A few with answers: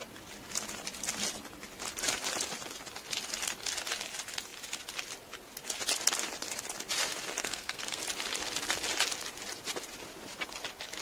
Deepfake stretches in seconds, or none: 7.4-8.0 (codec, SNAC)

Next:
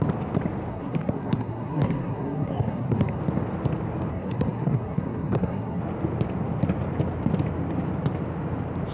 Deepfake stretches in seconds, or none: 0.7-3.2 (codec, SNAC); 4.1-5.8

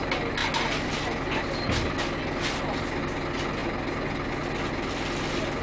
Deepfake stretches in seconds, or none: none

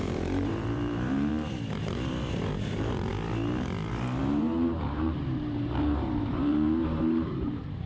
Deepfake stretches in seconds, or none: 0.0-1.3 (vocoder, BigVGAN v2); 1.8-3.1; 4.2-7.9

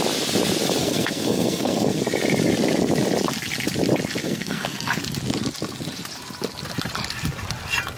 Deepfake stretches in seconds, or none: 0.8-2.0 (codec, SNAC); 4.2-5.0

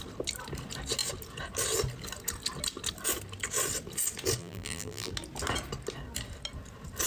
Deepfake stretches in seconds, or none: 4.4-5.1 (vocoder, BigVGAN v2)

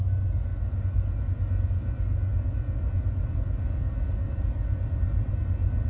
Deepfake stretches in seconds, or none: none

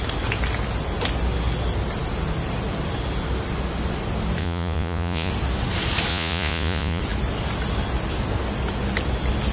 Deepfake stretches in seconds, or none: 4.4-5.3 (vocoder, Vocos); 6.1-7.0